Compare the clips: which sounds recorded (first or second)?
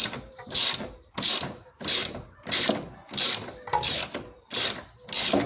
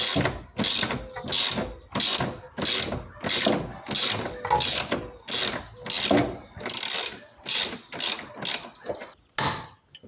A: second